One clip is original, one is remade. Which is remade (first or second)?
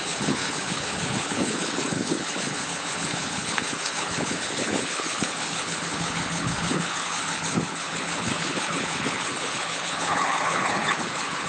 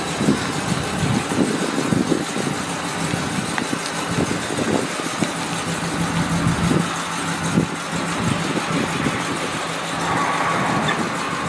first